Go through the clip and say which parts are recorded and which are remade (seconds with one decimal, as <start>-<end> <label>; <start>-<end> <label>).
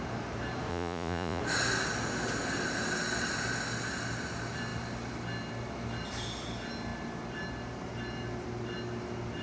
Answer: 0.0-0.7 recorded; 0.7-1.4 remade; 1.4-9.4 recorded